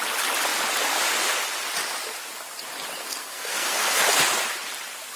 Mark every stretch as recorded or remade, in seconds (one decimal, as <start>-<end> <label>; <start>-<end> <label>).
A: 0.0-3.0 recorded; 3.0-4.0 remade; 4.0-5.2 recorded